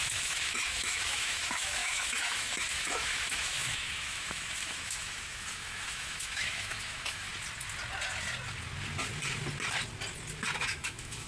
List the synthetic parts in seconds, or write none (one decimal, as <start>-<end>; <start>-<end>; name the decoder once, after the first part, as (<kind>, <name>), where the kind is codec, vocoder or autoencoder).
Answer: 0.0-7.3 (autoencoder, DAC-VAE); 10.6-11.3